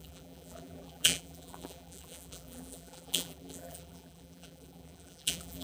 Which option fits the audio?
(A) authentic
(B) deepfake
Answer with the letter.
B